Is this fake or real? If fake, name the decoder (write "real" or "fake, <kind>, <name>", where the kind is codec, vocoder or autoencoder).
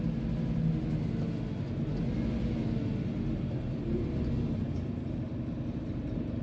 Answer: real